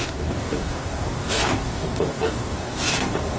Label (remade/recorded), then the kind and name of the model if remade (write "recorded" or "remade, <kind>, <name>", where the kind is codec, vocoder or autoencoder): remade, codec, DAC